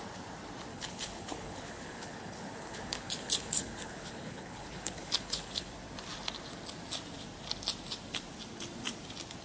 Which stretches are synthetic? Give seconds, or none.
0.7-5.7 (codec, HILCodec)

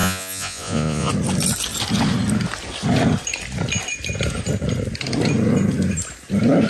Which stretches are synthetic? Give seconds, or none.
0.0-1.1 (vocoder, Vocos)

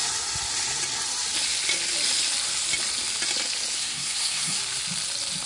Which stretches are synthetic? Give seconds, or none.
3.8-4.6 (codec, SNAC)

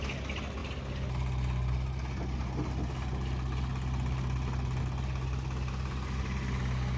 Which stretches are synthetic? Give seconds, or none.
none

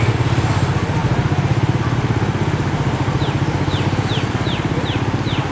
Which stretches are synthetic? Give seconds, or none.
none